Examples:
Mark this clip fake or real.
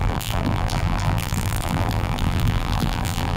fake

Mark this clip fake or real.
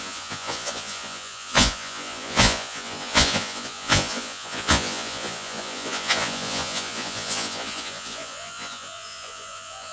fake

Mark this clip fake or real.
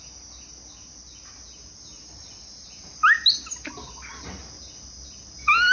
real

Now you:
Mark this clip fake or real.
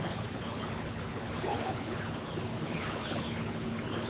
fake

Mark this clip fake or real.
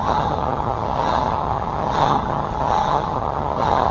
fake